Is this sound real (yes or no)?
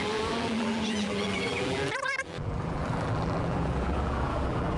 no